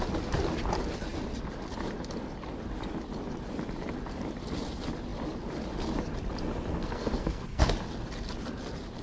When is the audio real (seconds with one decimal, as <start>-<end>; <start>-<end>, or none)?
0.0-6.7; 7.7-9.0